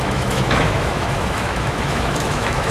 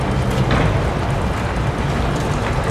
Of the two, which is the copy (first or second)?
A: first